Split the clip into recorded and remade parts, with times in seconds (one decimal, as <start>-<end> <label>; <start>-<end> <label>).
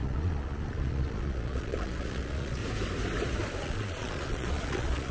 0.0-2.6 remade; 2.6-3.6 recorded; 3.6-5.1 remade